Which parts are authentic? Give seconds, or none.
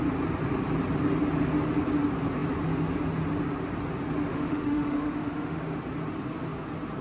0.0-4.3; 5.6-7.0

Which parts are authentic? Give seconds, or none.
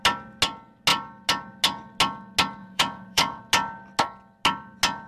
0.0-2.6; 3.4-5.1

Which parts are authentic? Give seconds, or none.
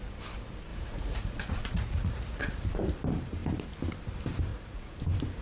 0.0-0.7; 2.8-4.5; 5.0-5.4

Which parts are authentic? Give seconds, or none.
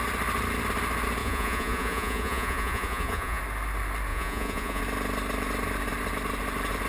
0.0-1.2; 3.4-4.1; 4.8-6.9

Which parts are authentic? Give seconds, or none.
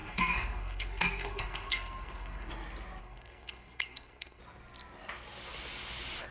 2.5-3.0; 4.4-6.3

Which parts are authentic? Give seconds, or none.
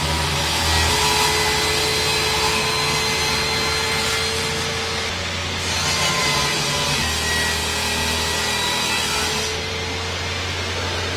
0.0-11.2